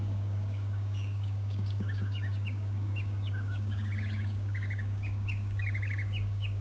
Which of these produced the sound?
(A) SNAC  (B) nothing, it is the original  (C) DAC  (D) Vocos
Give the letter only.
C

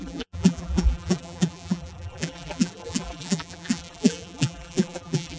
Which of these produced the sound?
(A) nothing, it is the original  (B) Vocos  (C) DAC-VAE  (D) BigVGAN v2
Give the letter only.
D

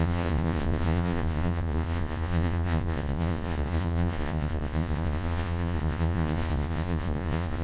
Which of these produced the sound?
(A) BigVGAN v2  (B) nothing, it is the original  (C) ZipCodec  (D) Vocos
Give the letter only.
D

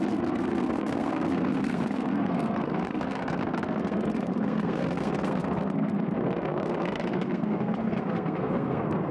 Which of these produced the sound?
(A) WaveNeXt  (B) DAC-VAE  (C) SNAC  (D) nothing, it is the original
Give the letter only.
C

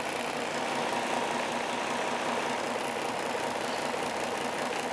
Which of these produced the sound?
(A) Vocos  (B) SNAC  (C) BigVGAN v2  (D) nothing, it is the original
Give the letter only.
D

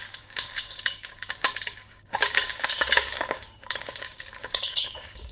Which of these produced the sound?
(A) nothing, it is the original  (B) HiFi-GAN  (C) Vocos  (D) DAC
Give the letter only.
D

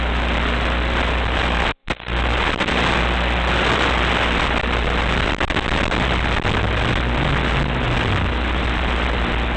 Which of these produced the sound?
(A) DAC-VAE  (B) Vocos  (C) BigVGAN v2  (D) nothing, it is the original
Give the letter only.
D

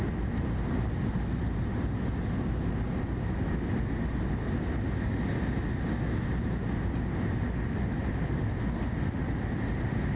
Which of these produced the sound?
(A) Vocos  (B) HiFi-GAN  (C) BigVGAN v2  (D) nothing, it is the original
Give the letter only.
D